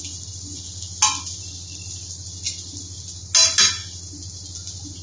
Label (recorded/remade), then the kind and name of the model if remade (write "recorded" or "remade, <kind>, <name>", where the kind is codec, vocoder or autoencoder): recorded